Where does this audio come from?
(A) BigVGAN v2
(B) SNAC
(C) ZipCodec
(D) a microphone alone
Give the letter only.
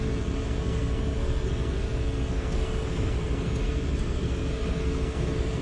B